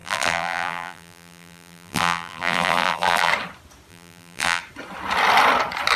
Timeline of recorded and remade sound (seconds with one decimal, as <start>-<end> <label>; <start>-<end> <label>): 0.0-3.3 remade; 3.3-3.9 recorded; 3.9-4.6 remade; 4.6-6.0 recorded